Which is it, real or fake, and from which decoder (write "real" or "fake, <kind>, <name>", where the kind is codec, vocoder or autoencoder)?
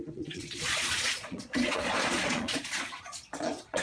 fake, vocoder, Vocos